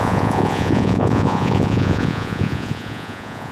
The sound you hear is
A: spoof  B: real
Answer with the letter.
A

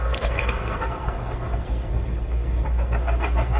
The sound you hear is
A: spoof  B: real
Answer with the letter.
A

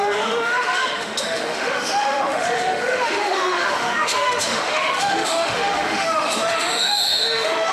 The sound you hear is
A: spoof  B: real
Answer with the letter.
A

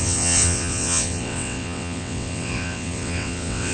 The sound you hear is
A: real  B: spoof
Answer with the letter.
B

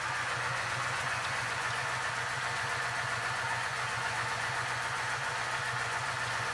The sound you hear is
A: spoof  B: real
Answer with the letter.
A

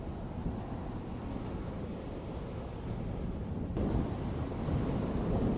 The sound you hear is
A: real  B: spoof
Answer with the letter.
A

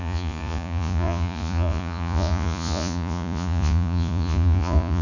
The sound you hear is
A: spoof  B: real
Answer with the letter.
A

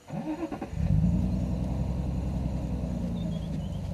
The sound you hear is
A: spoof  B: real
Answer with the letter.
B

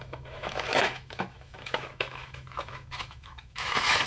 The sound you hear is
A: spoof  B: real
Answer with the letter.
A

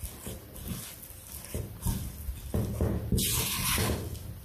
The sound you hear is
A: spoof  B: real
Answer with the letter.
B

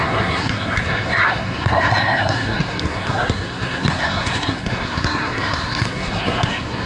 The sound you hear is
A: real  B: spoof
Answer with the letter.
B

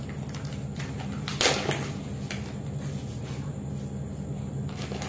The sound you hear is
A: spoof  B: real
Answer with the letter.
B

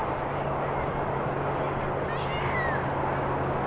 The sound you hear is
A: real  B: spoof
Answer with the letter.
A